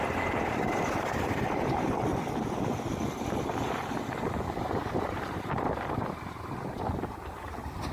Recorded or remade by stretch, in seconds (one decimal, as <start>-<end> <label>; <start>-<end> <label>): 0.0-2.1 remade; 2.1-3.5 recorded; 3.5-7.9 remade